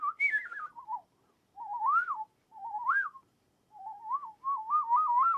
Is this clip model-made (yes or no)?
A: no